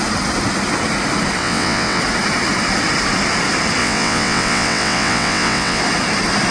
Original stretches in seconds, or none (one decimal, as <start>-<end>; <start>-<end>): 0.0-1.4; 2.0-3.8; 5.8-6.5